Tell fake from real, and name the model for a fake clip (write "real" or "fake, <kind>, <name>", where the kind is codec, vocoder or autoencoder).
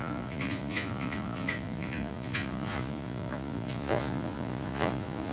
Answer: fake, vocoder, Vocos